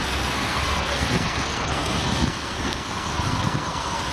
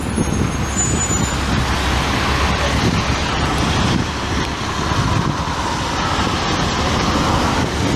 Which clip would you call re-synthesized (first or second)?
first